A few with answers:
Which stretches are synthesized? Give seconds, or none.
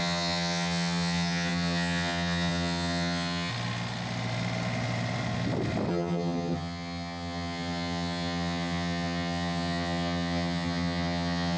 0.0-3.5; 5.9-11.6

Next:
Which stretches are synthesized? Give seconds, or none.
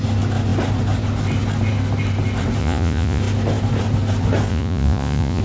2.6-3.2; 4.5-5.4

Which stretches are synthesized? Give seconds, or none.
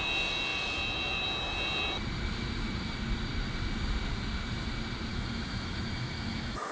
5.1-6.7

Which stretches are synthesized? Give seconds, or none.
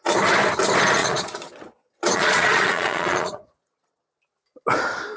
1.0-4.1